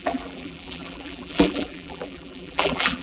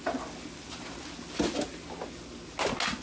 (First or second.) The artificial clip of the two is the first